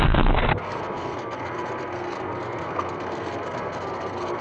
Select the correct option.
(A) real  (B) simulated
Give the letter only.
B